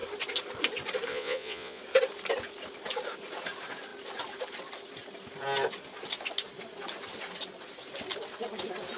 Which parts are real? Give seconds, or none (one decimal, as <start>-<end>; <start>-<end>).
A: 0.0-1.1; 1.8-9.0